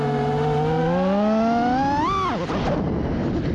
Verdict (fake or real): real